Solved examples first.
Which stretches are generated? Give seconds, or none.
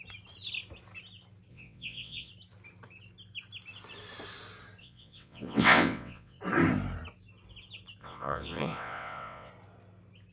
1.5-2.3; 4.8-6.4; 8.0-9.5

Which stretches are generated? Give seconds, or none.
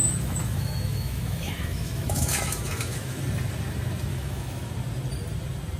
0.0-3.2; 4.1-4.7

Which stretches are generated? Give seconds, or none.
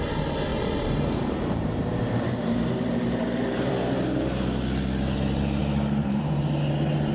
0.5-3.7; 5.6-6.3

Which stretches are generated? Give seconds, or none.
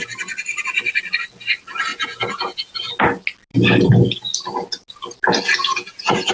1.9-2.9; 5.7-6.3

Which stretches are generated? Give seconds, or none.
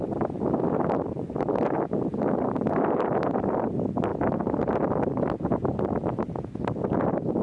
none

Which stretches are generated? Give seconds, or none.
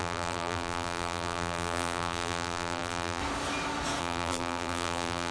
0.0-3.2; 4.0-5.3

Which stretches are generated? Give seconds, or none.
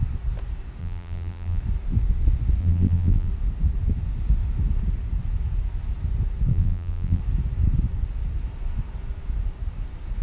0.8-1.6; 2.6-3.3; 6.5-7.2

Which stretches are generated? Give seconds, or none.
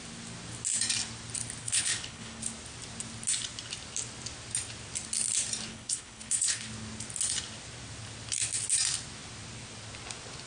1.6-2.4; 5.7-6.7